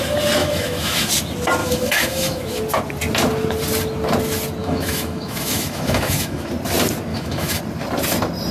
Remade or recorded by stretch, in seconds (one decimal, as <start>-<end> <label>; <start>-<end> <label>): 0.0-0.4 recorded; 0.4-1.1 remade; 1.1-1.6 recorded; 1.6-2.6 remade; 2.6-4.6 recorded; 4.6-6.5 remade; 6.5-7.1 recorded; 7.1-7.6 remade; 7.6-8.5 recorded